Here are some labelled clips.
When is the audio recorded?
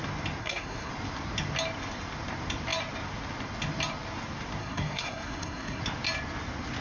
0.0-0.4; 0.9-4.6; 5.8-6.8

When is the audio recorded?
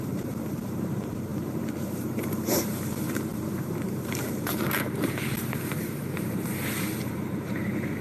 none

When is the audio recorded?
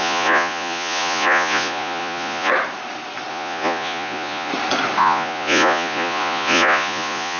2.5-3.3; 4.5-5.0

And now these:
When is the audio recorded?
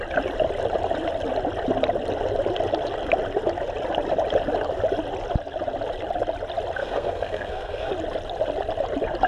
0.0-6.8; 7.9-9.3